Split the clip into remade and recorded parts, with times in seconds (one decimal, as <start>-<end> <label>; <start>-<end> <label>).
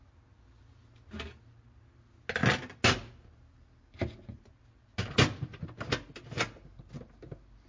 0.0-7.7 recorded